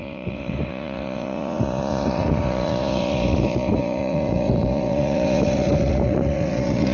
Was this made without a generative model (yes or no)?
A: no